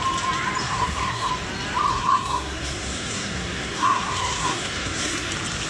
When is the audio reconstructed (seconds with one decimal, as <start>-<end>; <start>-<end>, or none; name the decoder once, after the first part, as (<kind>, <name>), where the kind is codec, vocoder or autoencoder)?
0.6-1.3 (codec, SNAC); 1.9-5.3